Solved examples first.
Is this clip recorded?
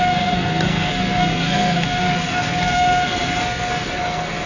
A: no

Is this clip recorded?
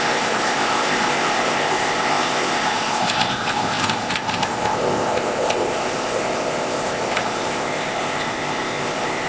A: no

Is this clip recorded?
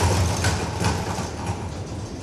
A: yes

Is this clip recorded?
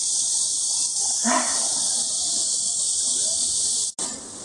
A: yes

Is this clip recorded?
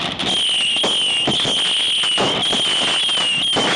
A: yes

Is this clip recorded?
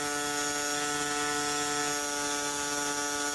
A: yes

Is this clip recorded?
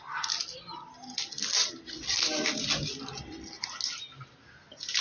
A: yes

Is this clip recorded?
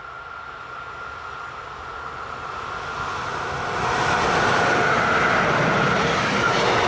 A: yes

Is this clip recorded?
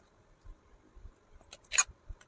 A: yes